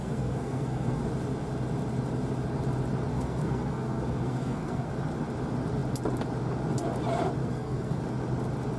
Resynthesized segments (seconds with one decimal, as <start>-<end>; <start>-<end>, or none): 0.0-1.0; 3.1-4.9; 7.4-8.0